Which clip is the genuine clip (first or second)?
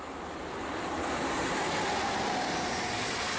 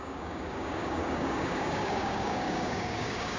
first